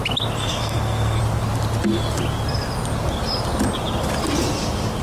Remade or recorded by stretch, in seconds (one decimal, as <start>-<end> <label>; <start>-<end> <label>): 0.0-0.4 recorded; 0.4-1.2 remade; 1.2-5.0 recorded